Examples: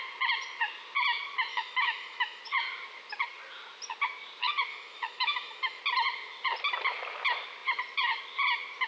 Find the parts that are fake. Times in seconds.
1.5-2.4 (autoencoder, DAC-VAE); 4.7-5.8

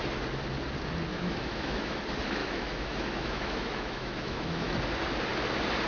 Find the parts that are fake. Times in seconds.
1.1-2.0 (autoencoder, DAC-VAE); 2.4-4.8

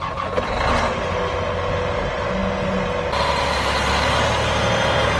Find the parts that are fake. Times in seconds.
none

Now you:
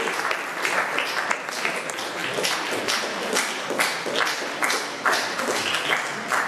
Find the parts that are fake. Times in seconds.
none

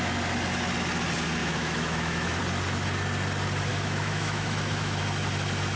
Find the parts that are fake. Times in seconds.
1.4-2.4 (autoencoder, DAC-VAE); 3.7-5.0

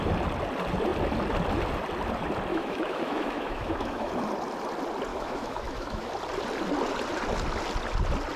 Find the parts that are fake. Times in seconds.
2.5-4.1 (autoencoder, DAC-VAE); 5.1-6.1

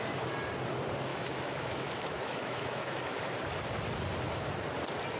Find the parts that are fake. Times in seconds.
1.1-3.0 (autoencoder, DAC-VAE)

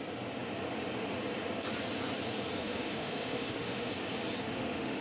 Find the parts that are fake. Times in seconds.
2.6-3.9 (autoencoder, DAC-VAE); 4.4-5.0